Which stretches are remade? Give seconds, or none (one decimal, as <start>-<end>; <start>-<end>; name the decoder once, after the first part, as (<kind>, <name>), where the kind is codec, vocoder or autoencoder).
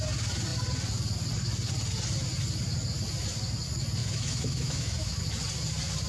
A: 4.0-5.2 (autoencoder, DAC-VAE)